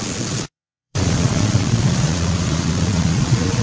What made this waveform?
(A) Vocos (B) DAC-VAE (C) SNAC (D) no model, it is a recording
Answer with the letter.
A